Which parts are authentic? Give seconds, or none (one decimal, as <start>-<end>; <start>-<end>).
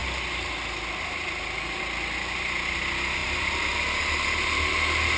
0.0-3.2; 3.9-5.2